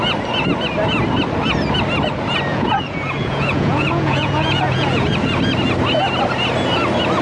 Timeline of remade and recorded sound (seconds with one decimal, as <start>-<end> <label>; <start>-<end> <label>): 0.0-2.5 recorded; 2.5-5.1 remade; 5.1-7.2 recorded